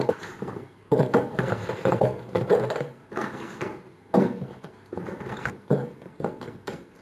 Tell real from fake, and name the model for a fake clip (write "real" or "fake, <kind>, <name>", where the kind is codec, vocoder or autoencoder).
fake, codec, SNAC